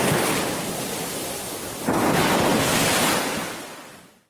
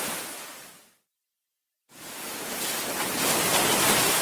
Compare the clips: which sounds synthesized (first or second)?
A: first